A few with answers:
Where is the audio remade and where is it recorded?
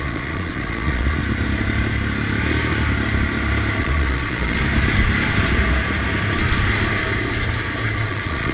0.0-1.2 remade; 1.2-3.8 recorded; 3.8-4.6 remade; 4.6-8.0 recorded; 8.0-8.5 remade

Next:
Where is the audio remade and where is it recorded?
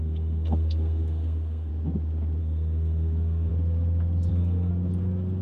0.0-1.7 remade; 1.7-2.4 recorded; 2.4-3.5 remade; 3.5-4.3 recorded; 4.3-4.7 remade; 4.7-5.4 recorded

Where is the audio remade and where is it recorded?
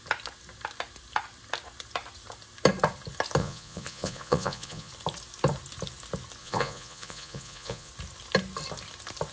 0.0-3.4 recorded; 3.4-4.9 remade; 4.9-6.4 recorded; 6.4-7.9 remade; 7.9-9.3 recorded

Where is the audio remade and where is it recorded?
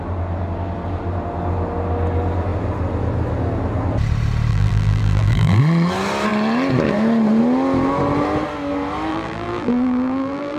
0.0-4.5 recorded; 4.5-5.6 remade; 5.6-9.1 recorded; 9.1-10.6 remade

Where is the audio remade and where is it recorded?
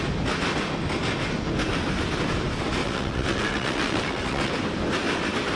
0.0-2.8 recorded; 2.8-4.5 remade; 4.5-5.6 recorded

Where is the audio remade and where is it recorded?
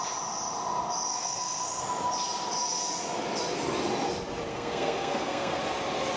0.0-1.1 recorded; 1.1-1.8 remade; 1.8-4.5 recorded; 4.5-5.6 remade; 5.6-6.2 recorded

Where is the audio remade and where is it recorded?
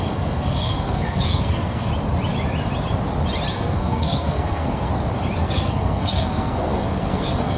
0.0-1.9 remade; 1.9-3.5 recorded; 3.5-4.9 remade; 4.9-5.4 recorded; 5.4-7.6 remade